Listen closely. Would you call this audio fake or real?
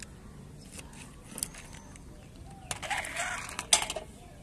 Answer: real